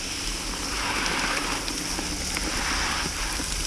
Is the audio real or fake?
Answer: real